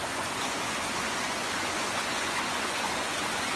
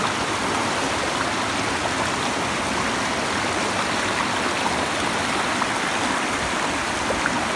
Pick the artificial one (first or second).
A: first